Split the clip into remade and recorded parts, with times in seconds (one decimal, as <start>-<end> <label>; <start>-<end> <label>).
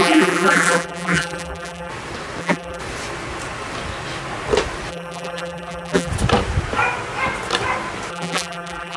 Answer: 0.0-1.9 remade; 1.9-2.4 recorded; 2.4-2.8 remade; 2.8-4.9 recorded; 4.9-6.1 remade; 6.1-8.1 recorded; 8.1-9.0 remade